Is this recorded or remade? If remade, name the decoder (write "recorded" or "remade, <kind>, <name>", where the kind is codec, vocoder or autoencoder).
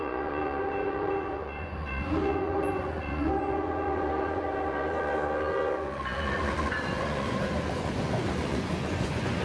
remade, vocoder, Vocos